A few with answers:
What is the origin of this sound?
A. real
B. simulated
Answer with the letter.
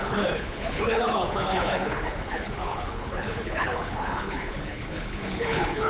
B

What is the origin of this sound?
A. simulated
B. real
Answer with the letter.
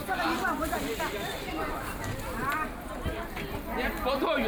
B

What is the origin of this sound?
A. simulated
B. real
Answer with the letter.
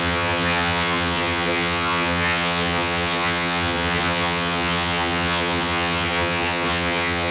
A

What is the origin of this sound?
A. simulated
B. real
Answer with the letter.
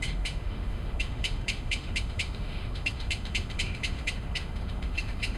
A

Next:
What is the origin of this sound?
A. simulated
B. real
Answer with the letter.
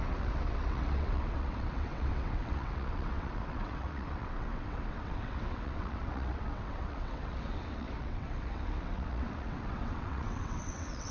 A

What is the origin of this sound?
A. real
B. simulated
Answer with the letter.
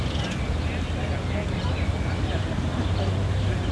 A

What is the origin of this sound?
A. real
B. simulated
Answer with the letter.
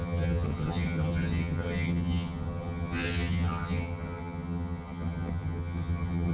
B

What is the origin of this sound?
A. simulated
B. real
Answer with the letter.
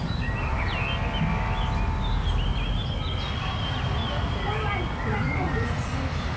B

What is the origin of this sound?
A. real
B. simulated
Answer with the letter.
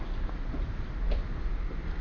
A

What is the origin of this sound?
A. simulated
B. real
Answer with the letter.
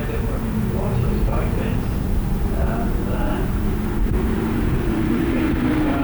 A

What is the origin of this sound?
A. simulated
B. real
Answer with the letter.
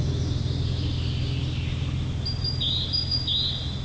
B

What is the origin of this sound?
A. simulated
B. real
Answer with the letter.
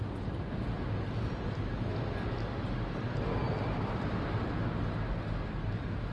B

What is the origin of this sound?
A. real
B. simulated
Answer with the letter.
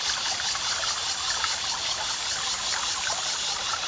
A